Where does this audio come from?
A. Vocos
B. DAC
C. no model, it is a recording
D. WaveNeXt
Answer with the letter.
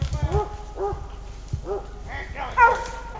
C